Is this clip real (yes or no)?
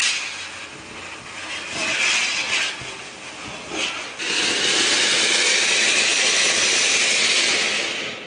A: yes